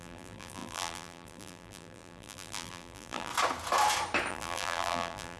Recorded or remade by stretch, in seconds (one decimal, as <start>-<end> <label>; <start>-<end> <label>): 0.0-3.3 remade; 3.3-4.3 recorded; 4.3-5.4 remade